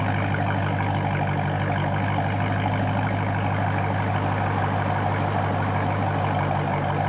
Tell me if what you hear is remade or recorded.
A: recorded